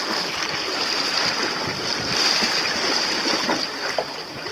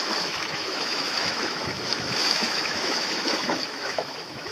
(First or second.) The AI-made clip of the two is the second